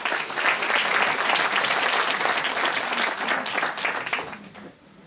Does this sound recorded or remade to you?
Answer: recorded